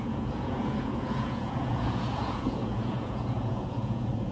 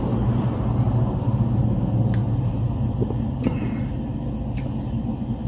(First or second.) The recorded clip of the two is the second